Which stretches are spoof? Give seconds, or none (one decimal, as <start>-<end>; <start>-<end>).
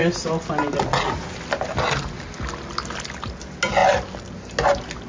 none